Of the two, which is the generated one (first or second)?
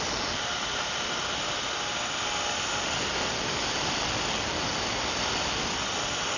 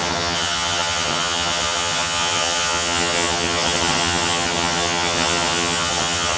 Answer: second